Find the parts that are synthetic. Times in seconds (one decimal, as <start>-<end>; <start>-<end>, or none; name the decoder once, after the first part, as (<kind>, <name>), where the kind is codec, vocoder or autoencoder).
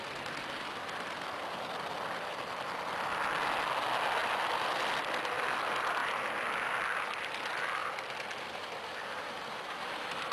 4.2-4.9 (vocoder, BigVGAN v2); 7.8-8.6